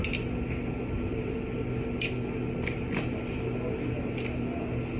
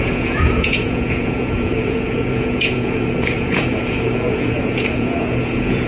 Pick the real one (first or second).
first